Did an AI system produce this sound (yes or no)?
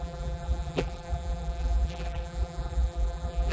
yes